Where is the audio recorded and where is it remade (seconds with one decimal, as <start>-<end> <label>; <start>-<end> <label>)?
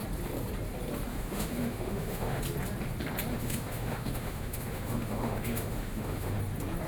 0.0-1.1 recorded; 1.1-2.4 remade; 2.4-3.3 recorded; 3.3-6.4 remade; 6.4-6.9 recorded